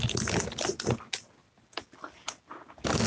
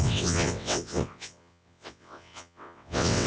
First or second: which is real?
first